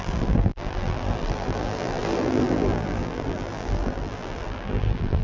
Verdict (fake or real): fake